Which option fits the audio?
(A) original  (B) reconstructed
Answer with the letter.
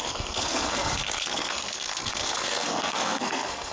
B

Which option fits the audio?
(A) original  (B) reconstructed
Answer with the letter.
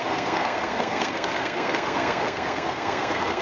B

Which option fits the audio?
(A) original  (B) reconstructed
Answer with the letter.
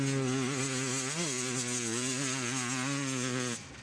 A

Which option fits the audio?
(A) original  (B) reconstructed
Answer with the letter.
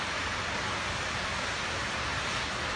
A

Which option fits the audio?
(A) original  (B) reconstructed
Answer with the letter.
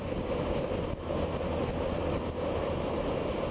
A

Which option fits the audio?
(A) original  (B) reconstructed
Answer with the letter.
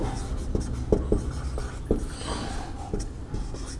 A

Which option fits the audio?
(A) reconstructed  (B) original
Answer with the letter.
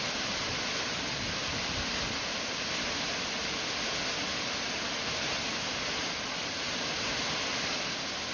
B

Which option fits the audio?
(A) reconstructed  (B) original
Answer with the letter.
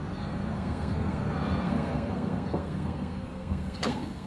A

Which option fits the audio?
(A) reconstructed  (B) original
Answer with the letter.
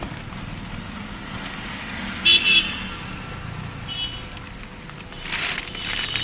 B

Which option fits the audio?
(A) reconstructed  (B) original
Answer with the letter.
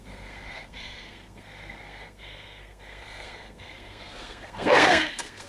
A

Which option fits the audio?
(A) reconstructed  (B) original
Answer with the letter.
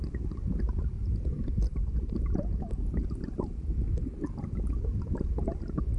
B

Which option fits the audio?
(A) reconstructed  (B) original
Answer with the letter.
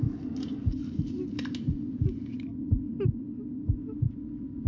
B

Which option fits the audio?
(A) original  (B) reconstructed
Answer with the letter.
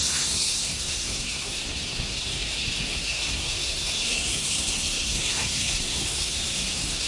B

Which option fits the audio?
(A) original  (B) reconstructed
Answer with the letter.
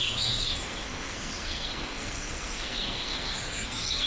B